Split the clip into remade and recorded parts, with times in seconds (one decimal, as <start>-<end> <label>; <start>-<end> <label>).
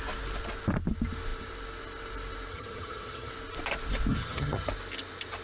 0.0-2.5 recorded; 2.5-3.3 remade; 3.3-4.1 recorded; 4.1-4.7 remade; 4.7-5.4 recorded